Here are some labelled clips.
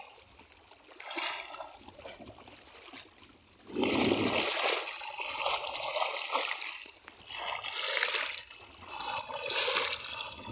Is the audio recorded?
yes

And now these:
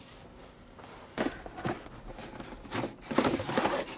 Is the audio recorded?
yes